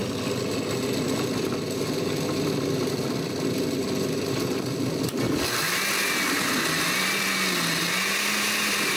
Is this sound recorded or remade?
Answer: recorded